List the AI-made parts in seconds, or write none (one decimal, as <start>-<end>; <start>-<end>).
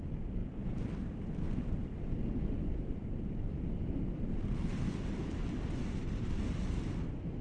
0.4-3.6